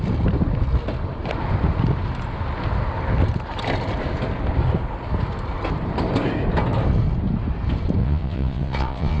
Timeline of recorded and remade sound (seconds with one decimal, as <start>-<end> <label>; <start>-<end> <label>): 0.0-8.0 recorded; 8.0-9.2 remade